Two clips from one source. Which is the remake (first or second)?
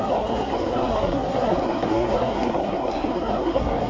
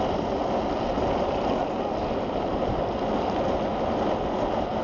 first